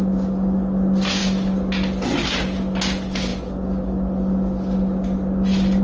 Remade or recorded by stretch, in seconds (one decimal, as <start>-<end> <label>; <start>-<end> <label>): 0.0-5.8 recorded